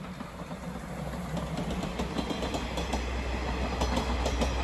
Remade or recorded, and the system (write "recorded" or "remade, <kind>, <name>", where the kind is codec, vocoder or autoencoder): recorded